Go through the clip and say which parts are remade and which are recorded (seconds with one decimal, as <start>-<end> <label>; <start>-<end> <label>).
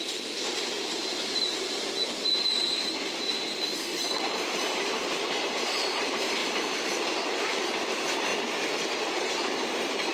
0.0-8.3 remade; 8.3-9.3 recorded; 9.3-10.1 remade